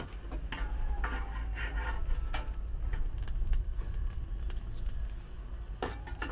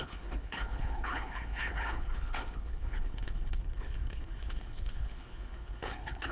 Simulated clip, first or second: second